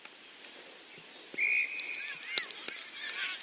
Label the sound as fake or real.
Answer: real